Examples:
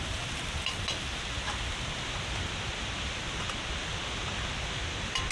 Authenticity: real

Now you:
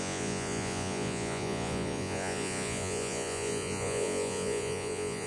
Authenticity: fake